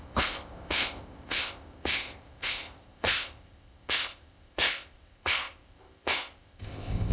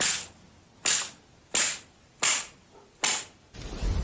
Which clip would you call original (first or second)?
second